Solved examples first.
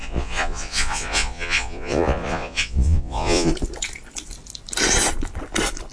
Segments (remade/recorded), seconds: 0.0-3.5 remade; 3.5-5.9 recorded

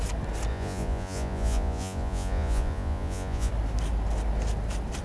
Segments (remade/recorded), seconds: 0.0-0.5 recorded; 0.5-3.5 remade; 3.5-5.0 recorded